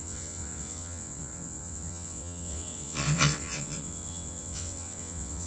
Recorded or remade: remade